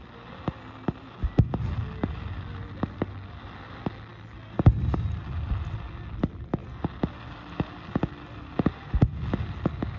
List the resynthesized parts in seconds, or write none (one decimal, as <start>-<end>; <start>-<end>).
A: none